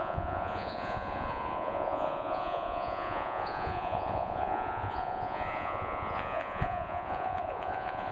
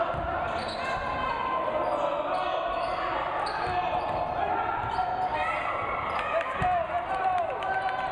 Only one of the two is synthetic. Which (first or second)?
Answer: first